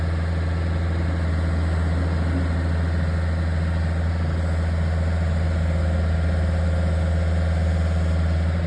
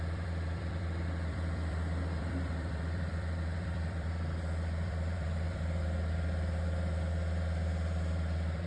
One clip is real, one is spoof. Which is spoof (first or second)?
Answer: second